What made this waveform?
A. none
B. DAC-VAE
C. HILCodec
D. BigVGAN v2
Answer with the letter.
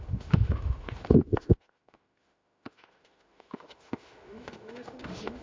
B